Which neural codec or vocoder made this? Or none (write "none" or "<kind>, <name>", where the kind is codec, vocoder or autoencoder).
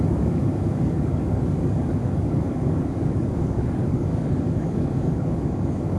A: codec, DAC